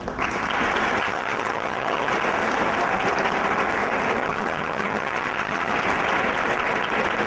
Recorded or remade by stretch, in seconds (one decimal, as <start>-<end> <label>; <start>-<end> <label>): 0.0-1.0 recorded; 1.0-2.1 remade; 2.1-4.2 recorded; 4.2-5.7 remade; 5.7-7.3 recorded